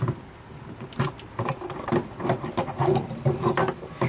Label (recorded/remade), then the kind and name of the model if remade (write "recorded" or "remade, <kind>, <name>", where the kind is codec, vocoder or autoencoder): recorded